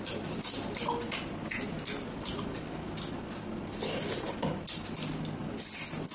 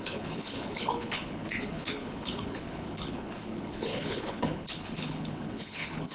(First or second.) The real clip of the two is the first